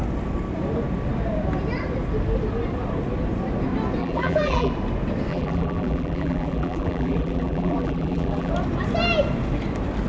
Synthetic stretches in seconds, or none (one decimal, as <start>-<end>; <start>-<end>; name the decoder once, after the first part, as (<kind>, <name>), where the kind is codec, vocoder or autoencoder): 4.0-4.7 (vocoder, BigVGAN v2); 5.3-8.5